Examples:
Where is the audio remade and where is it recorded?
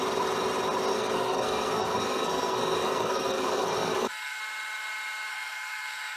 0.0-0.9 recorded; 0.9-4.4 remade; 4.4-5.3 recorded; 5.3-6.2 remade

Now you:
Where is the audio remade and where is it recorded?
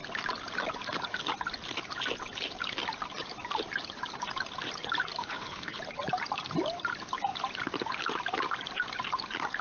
0.0-5.2 recorded; 5.2-5.8 remade; 5.8-9.6 recorded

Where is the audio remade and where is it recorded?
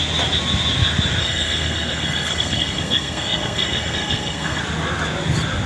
0.0-1.2 recorded; 1.2-4.6 remade; 4.6-5.7 recorded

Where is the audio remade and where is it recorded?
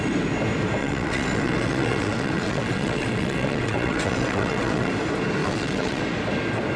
0.0-0.8 recorded; 0.8-4.9 remade; 4.9-5.4 recorded; 5.4-6.0 remade; 6.0-6.8 recorded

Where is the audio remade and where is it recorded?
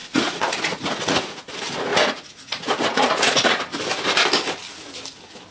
0.0-1.5 remade; 1.5-1.9 recorded; 1.9-3.6 remade; 3.6-5.5 recorded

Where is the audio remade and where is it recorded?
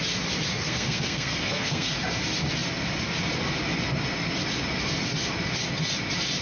0.0-0.5 recorded; 0.5-1.9 remade; 1.9-6.4 recorded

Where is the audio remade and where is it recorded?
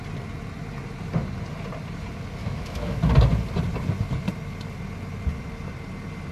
0.0-2.4 recorded; 2.4-3.0 remade; 3.0-6.3 recorded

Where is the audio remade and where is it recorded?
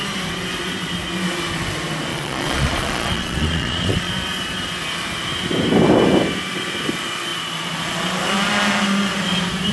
0.0-2.1 recorded; 2.1-4.1 remade; 4.1-9.7 recorded